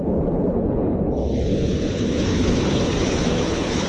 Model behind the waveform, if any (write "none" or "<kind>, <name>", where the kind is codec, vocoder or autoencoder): codec, HILCodec